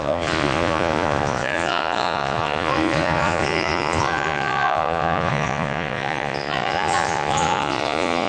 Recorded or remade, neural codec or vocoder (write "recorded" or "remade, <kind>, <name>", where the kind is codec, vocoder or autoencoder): remade, vocoder, Vocos